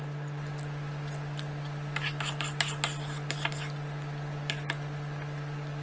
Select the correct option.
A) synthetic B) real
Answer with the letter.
B